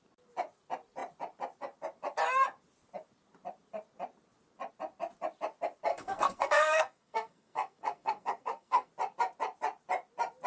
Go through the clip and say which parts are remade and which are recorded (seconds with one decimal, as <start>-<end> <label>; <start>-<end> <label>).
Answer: 0.0-5.9 recorded; 5.9-8.9 remade; 8.9-10.5 recorded